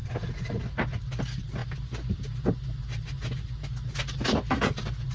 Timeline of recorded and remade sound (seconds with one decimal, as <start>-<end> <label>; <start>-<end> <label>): 0.0-0.6 remade; 0.6-5.1 recorded